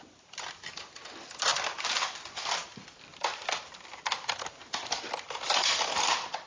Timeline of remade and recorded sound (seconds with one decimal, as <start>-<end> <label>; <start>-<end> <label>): 0.0-6.5 recorded